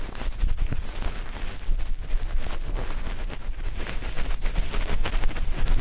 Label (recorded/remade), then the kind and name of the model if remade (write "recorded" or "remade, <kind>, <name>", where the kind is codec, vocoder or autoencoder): recorded